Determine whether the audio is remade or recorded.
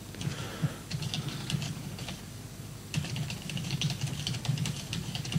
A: remade